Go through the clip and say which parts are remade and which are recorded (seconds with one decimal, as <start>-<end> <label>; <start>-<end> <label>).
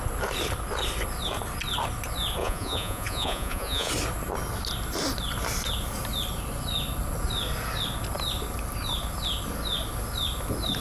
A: 0.0-2.4 recorded; 2.4-3.9 remade; 3.9-10.8 recorded